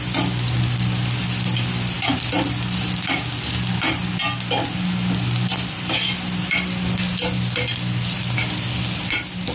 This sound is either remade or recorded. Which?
recorded